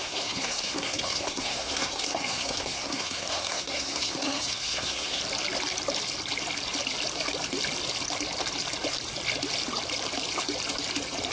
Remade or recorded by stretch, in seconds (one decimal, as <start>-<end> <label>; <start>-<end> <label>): 0.0-5.2 remade; 5.2-11.3 recorded